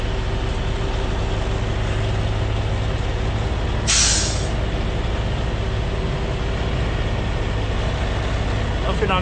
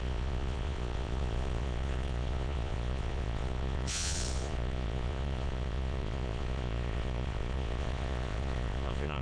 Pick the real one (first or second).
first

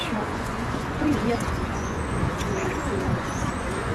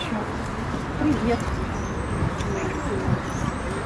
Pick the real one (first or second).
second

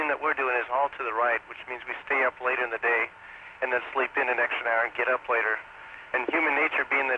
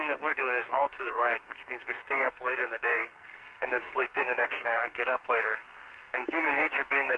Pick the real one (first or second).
first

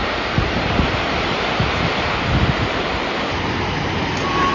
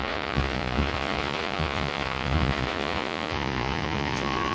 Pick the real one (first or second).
first